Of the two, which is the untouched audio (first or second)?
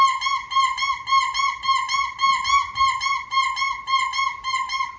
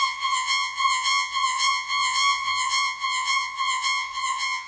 first